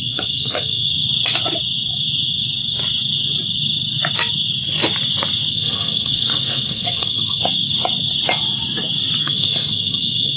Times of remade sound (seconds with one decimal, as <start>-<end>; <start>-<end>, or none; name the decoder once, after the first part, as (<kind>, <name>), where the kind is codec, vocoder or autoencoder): 0.0-0.9 (codec, SNAC); 5.5-7.4; 9.2-10.4